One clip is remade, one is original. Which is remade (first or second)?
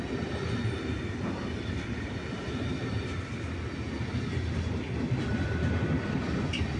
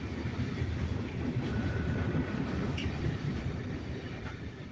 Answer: second